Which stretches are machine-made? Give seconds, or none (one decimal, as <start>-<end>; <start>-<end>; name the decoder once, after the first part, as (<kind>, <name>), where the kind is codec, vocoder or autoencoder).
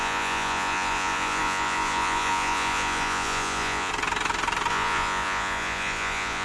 0.0-3.9 (vocoder, Vocos); 4.7-6.4